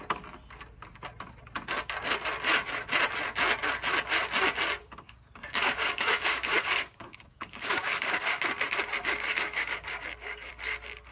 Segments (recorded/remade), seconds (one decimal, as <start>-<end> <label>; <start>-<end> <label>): 0.0-4.8 recorded; 4.8-8.4 remade; 8.4-9.0 recorded; 9.0-10.5 remade; 10.5-11.1 recorded